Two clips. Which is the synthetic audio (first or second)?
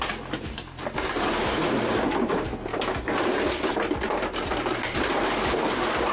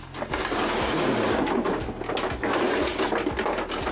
first